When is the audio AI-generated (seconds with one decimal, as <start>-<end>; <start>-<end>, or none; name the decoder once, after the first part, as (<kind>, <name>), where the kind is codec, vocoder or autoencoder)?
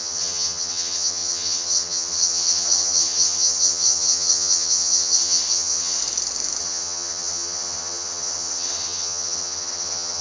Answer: 0.0-6.0 (vocoder, HiFi-GAN); 6.6-10.2